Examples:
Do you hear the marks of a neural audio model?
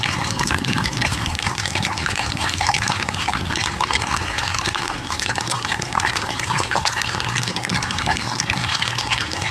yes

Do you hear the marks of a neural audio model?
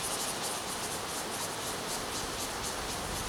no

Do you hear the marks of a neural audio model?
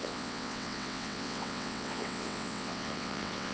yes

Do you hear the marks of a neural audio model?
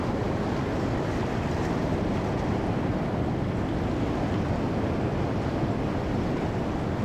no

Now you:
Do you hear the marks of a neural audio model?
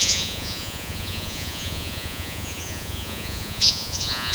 yes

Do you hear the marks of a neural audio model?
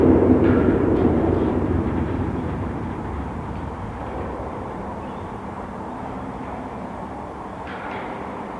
yes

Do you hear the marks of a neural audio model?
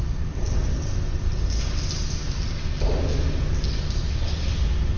no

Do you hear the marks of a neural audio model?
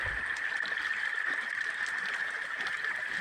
no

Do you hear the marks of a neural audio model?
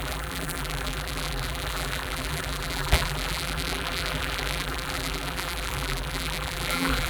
yes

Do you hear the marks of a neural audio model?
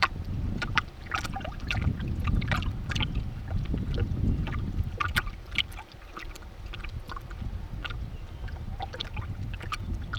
yes